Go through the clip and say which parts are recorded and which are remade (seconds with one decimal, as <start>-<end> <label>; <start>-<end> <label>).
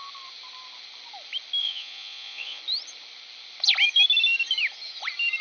0.0-1.6 recorded; 1.6-2.6 remade; 2.6-5.4 recorded